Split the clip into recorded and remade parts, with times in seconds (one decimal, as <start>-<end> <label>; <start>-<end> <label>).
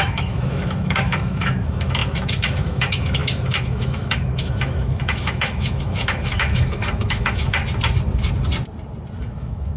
0.0-7.6 remade; 7.6-9.2 recorded; 9.2-9.8 remade